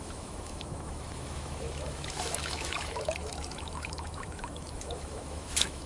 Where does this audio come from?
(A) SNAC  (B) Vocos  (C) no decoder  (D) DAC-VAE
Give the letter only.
D